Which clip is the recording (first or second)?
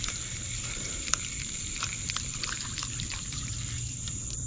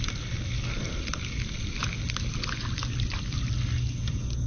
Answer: second